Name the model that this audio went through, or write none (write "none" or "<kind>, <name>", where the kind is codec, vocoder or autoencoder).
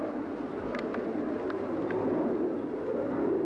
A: none